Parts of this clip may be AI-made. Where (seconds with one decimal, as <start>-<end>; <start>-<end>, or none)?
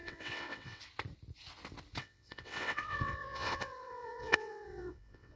0.0-0.8; 2.0-5.4